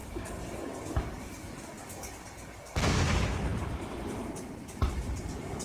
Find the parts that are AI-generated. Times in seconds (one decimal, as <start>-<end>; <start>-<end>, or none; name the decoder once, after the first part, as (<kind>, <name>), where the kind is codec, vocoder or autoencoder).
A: 0.0-2.8 (codec, DAC)